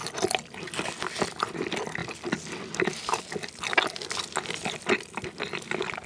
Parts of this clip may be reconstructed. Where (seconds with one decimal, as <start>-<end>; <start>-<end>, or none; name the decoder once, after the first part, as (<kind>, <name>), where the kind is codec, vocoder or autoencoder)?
none